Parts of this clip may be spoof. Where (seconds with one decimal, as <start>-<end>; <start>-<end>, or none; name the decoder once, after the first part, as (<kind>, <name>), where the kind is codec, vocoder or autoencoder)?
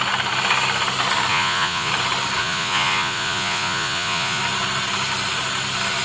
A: 1.3-1.9 (vocoder, Vocos); 2.4-4.4